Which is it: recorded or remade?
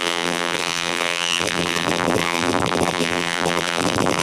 remade